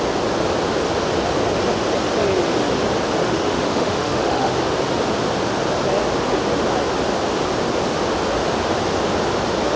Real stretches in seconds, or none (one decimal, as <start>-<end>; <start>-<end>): 0.0-3.2; 4.5-9.8